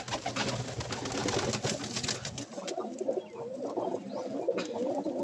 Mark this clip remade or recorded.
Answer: recorded